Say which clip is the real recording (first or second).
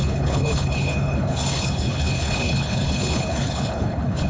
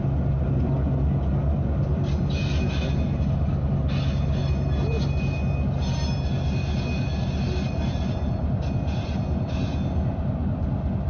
second